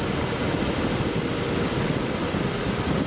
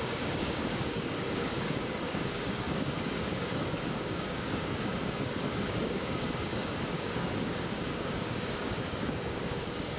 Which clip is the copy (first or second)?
second